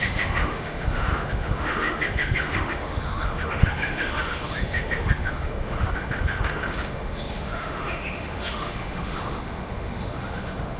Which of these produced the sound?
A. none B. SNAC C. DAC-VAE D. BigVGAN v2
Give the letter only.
C